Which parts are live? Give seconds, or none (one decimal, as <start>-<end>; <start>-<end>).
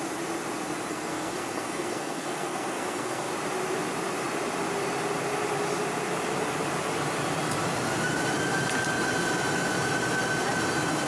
0.0-0.9; 3.3-11.1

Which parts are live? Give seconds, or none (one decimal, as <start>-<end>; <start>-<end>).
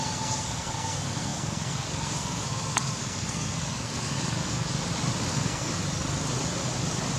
4.7-5.3; 5.8-7.2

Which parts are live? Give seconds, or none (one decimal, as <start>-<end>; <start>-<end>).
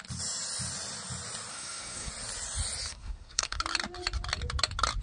0.0-1.5; 2.1-2.9; 3.6-5.0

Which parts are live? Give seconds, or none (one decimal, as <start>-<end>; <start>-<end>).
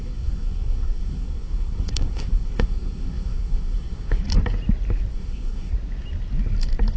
4.2-5.1; 5.7-7.0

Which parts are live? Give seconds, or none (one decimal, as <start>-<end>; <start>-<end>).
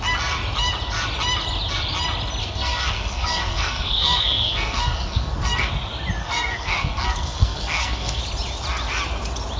0.0-2.4; 5.7-6.2; 8.2-9.6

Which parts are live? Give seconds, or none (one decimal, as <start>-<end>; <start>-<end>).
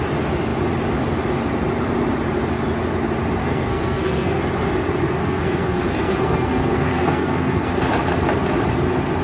0.0-3.4; 4.4-5.2; 7.7-9.2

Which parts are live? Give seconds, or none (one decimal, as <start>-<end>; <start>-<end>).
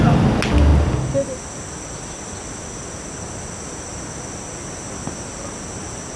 0.0-6.2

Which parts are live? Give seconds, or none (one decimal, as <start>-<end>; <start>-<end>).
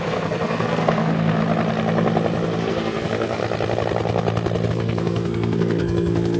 1.4-2.6; 3.4-4.7